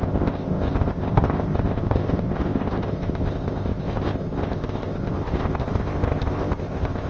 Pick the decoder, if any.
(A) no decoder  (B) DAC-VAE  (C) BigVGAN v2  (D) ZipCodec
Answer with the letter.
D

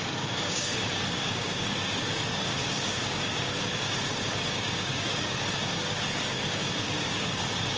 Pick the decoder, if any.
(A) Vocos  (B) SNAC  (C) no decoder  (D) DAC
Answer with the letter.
D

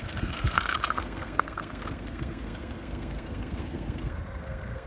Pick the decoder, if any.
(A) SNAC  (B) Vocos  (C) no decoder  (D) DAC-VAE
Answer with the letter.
A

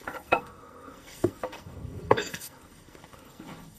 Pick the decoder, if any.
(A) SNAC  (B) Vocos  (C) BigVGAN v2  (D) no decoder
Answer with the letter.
A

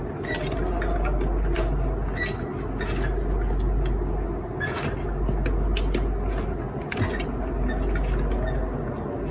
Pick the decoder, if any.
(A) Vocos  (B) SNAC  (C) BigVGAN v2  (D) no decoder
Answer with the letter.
D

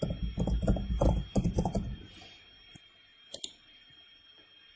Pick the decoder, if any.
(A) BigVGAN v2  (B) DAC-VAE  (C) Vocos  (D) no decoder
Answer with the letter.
D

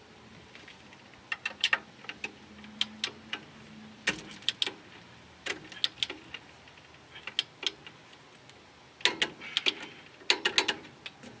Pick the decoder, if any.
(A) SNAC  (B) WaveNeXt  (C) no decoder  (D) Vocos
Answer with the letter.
C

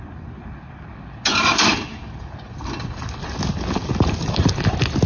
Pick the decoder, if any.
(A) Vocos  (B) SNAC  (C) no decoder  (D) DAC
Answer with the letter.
C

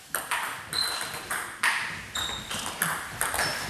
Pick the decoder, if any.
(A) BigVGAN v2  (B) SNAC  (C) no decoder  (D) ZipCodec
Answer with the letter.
C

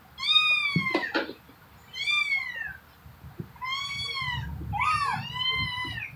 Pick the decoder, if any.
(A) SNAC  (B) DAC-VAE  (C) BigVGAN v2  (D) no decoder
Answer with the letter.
D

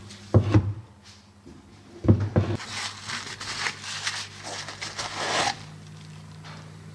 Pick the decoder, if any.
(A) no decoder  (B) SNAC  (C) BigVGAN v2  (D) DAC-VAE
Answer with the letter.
A